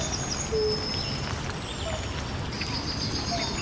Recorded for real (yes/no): yes